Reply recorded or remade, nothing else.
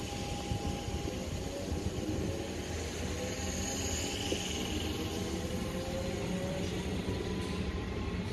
recorded